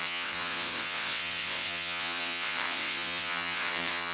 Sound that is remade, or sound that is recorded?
remade